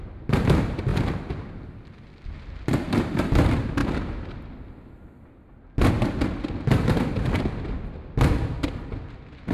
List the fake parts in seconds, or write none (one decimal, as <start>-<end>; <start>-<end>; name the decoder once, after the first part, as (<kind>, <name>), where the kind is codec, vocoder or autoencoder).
none